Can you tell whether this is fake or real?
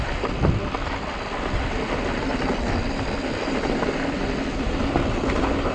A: real